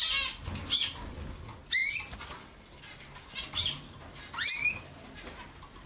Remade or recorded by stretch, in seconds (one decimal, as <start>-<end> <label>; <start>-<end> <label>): 0.0-5.9 recorded